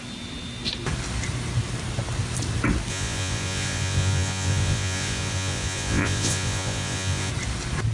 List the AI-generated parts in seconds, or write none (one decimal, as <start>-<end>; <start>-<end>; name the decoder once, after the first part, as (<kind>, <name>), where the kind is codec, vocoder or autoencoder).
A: 2.9-7.3 (vocoder, Vocos)